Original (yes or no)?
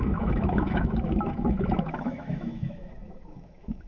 no